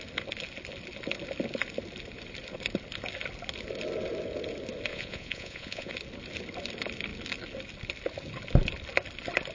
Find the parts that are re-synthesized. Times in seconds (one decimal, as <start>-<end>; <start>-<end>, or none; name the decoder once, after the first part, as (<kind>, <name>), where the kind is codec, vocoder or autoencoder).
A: 4.9-5.9 (vocoder, Vocos)